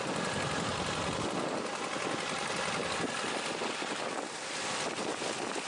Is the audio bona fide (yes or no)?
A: yes